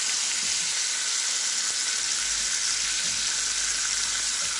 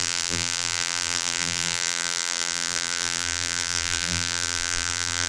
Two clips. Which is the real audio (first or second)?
first